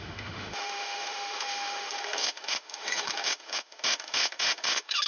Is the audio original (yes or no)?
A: no